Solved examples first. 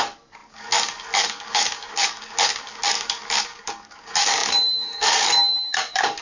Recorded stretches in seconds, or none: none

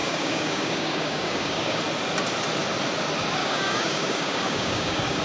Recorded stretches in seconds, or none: 1.8-3.4

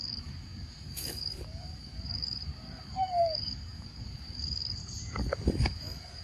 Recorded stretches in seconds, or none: 4.8-5.3

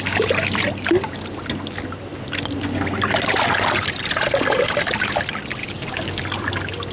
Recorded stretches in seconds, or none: 0.0-5.6; 6.2-6.9

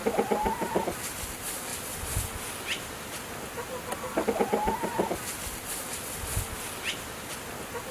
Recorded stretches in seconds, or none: 0.0-7.9